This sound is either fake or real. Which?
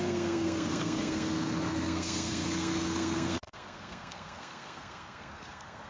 fake